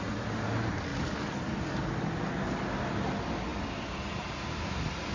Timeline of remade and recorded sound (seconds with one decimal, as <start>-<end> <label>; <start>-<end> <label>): 0.0-5.1 recorded